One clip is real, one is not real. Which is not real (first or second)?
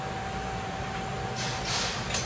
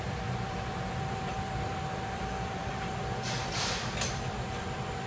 second